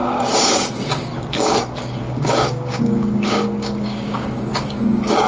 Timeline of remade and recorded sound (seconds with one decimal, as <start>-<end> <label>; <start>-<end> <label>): 0.0-1.1 remade; 1.1-2.0 recorded; 2.0-5.3 remade